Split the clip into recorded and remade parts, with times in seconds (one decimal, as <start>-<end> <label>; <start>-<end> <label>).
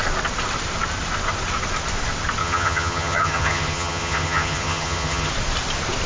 0.0-2.4 recorded; 2.4-5.3 remade; 5.3-6.1 recorded